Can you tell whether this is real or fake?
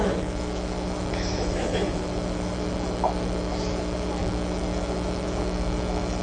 fake